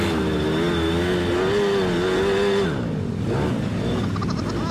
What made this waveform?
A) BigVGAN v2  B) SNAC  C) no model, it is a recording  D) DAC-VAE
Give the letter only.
C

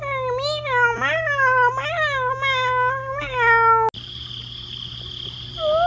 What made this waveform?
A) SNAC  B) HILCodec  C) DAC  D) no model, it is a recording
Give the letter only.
D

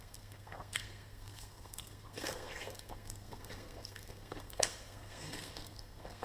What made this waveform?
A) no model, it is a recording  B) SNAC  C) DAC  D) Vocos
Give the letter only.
B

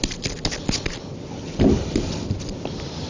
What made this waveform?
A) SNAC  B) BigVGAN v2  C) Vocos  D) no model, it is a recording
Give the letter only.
D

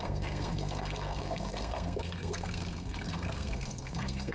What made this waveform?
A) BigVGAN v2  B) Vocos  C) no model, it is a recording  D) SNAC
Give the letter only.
D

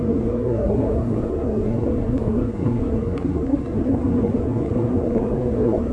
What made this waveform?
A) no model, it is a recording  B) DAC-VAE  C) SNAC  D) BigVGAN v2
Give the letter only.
C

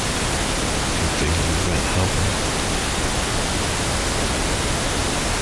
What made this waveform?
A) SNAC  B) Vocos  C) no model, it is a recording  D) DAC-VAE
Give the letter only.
C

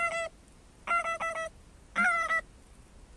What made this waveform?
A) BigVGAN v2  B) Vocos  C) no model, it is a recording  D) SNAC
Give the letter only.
C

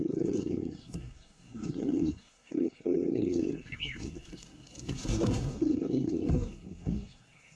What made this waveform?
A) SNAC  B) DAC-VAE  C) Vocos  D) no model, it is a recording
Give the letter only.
A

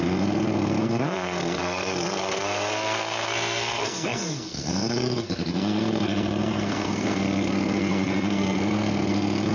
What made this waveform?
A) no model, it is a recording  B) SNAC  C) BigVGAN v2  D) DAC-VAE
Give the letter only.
B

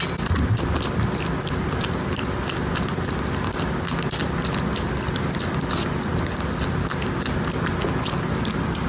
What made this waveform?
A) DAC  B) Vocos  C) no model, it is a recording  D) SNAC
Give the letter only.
C